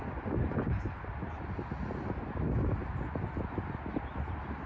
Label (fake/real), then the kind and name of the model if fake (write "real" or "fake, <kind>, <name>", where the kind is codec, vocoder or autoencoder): real